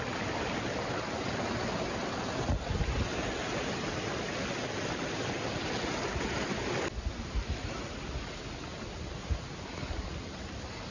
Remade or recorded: recorded